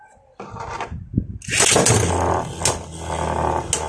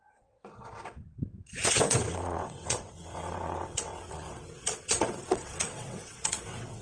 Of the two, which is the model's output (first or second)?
second